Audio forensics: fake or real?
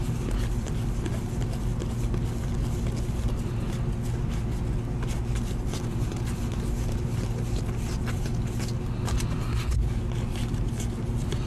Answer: real